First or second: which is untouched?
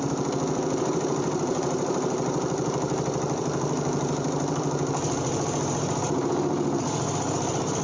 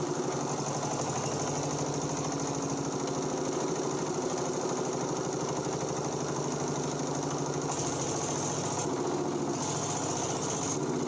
second